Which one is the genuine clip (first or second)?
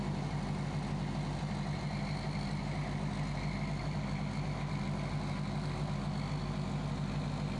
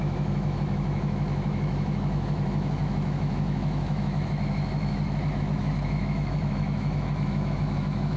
first